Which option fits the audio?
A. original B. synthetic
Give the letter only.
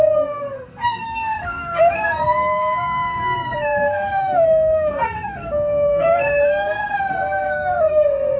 B